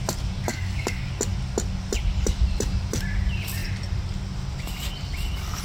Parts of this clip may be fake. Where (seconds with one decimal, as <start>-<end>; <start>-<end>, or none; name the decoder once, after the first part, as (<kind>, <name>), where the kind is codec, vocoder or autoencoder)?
0.5-1.1 (codec, DAC)